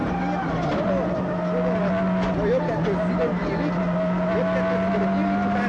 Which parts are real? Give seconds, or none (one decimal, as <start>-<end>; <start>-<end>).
0.0-5.7